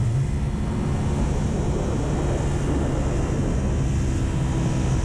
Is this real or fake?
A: real